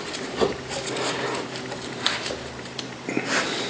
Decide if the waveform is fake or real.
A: real